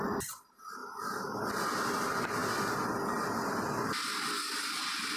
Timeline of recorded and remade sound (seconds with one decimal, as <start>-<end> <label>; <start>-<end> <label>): 0.0-5.2 recorded